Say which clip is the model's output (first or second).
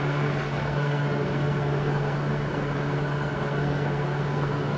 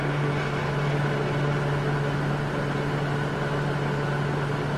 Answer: first